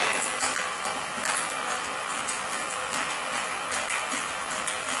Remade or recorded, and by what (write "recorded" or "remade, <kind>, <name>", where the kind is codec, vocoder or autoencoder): remade, vocoder, BigVGAN v2